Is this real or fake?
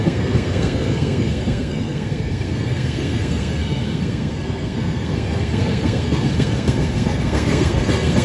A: fake